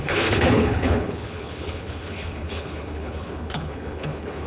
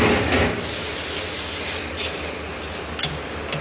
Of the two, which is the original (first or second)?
second